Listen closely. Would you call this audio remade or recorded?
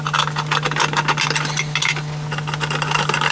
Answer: recorded